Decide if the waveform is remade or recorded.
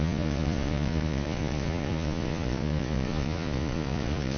remade